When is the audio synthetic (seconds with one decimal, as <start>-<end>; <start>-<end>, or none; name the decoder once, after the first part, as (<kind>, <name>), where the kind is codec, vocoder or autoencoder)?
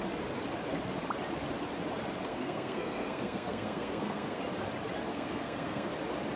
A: 2.3-4.4 (codec, SNAC); 5.1-5.9